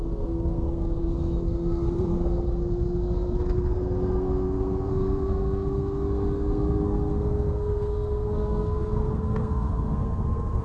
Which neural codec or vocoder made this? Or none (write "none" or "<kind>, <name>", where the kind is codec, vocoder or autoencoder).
codec, SNAC